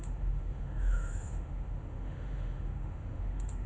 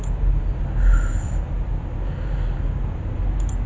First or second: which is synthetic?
first